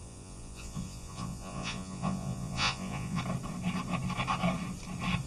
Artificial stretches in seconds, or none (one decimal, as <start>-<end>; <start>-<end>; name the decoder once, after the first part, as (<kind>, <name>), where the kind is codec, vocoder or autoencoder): 0.0-3.2 (vocoder, Vocos)